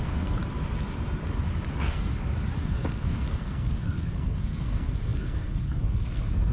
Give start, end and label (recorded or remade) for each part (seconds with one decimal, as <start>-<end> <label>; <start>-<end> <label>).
0.0-0.4 remade; 0.4-1.7 recorded; 1.7-2.1 remade; 2.1-2.6 recorded; 2.6-6.5 remade